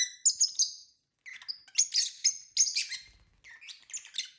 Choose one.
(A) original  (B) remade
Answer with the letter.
A